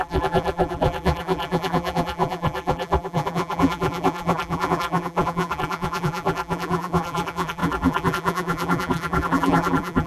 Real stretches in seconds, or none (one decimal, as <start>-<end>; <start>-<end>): none